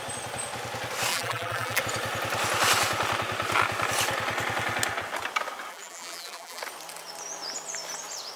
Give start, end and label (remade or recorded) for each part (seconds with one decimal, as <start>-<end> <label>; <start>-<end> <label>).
0.0-1.1 recorded; 1.1-1.8 remade; 1.8-5.7 recorded; 5.7-6.6 remade; 6.6-8.4 recorded

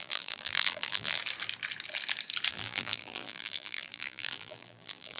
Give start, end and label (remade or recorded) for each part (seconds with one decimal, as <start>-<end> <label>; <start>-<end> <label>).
0.0-1.2 remade; 1.2-2.5 recorded; 2.5-5.2 remade

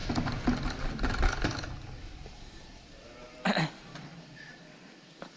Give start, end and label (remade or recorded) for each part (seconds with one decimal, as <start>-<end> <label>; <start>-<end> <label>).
0.0-5.4 recorded

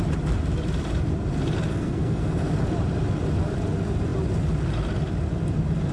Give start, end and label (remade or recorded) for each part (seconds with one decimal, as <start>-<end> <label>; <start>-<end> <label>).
0.0-1.7 recorded; 1.7-2.5 remade; 2.5-5.9 recorded

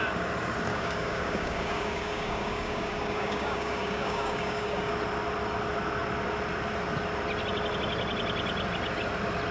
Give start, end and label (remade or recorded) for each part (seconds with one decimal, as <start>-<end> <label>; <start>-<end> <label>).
0.0-0.7 recorded; 0.7-4.9 remade; 4.9-9.5 recorded

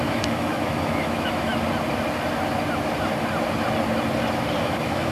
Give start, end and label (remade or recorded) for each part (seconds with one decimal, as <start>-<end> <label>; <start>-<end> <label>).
0.0-1.5 remade; 1.5-4.6 recorded; 4.6-5.1 remade

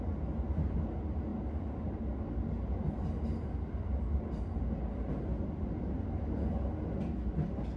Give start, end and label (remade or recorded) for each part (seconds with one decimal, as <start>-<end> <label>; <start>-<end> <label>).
0.0-7.8 recorded

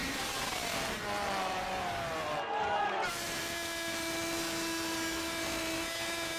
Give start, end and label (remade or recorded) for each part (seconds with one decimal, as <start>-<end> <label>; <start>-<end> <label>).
0.0-6.4 recorded